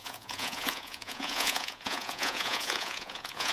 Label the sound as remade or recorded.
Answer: remade